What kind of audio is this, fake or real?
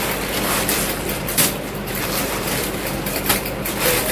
fake